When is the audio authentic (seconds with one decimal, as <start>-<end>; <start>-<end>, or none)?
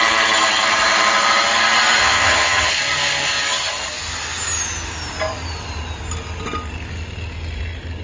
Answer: 0.0-2.0; 2.7-8.0